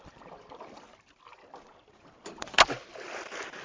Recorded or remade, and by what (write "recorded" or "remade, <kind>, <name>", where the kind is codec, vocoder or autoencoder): recorded